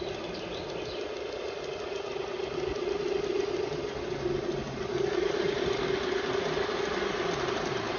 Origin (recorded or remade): recorded